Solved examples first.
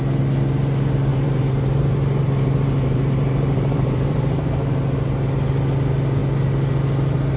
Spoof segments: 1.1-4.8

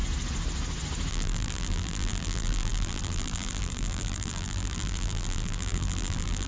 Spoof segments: 1.1-6.5

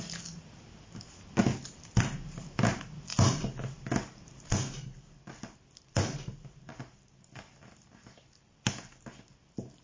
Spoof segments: none